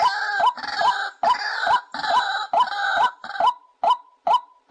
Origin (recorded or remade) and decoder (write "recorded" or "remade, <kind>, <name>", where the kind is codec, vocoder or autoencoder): recorded